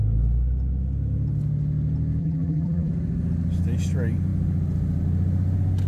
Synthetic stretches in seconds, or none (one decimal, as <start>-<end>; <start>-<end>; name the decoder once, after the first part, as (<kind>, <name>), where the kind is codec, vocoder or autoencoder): 2.2-2.9 (vocoder, BigVGAN v2)